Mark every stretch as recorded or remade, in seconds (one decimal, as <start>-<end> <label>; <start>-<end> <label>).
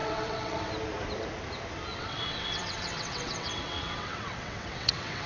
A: 0.0-0.7 remade; 0.7-1.9 recorded; 1.9-5.3 remade